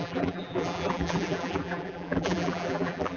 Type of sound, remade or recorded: remade